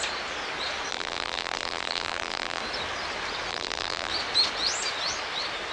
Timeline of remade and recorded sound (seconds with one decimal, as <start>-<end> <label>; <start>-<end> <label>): 0.0-0.9 recorded; 0.9-2.6 remade; 2.6-3.5 recorded; 3.5-4.1 remade; 4.1-5.7 recorded